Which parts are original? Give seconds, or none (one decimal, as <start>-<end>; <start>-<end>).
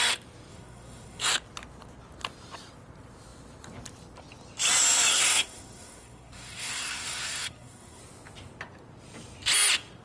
0.0-0.5; 1.3-5.1; 8.0-10.0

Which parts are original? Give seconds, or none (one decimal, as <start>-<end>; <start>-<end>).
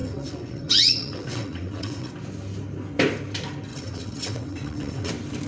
2.1-3.7; 5.1-5.5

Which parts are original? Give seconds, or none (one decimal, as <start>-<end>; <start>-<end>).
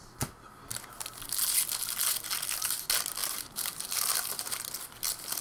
0.0-3.2; 4.1-5.4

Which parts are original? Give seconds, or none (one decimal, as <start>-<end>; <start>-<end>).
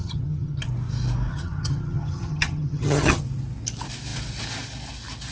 0.7-1.3; 3.2-5.3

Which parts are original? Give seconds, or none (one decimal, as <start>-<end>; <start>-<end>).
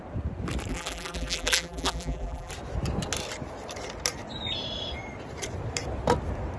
0.0-0.7; 2.5-6.6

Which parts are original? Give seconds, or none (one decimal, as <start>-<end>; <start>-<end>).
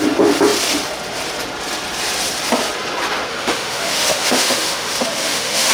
0.0-3.3